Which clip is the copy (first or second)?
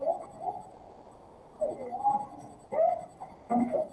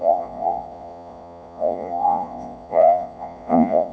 second